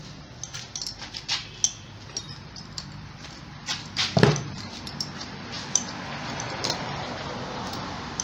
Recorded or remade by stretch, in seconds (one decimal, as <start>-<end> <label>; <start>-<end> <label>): 0.0-2.4 recorded; 2.4-8.2 remade